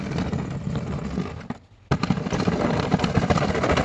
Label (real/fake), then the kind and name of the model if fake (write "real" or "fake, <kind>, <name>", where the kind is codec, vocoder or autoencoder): real